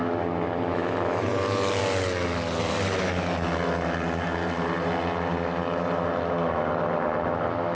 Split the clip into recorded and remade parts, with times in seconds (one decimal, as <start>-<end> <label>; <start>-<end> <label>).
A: 0.0-7.7 recorded